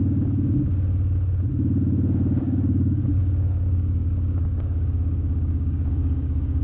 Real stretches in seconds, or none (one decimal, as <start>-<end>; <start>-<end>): 0.6-2.4